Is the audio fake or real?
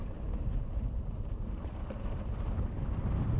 fake